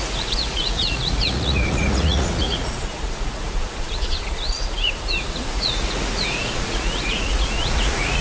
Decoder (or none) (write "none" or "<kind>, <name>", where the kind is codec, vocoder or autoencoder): vocoder, Vocos